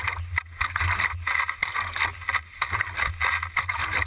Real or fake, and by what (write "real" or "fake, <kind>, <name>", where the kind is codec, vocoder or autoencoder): real